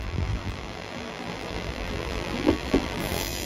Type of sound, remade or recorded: remade